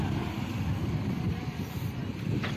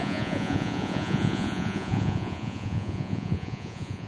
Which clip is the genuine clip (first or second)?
first